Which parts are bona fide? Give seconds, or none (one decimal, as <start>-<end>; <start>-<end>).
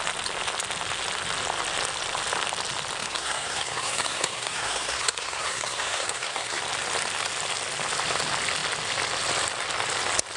0.0-3.0; 6.6-10.4